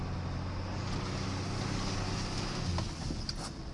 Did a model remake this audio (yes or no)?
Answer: no